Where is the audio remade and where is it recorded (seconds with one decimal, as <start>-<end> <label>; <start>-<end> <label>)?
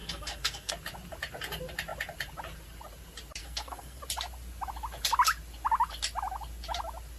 0.0-0.7 remade; 0.7-3.4 recorded; 3.4-4.0 remade; 4.0-7.2 recorded